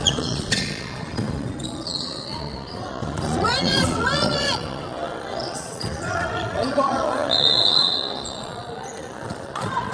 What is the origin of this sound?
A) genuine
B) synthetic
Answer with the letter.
B